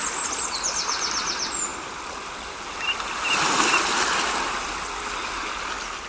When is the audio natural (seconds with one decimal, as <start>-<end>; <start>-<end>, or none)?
0.0-6.1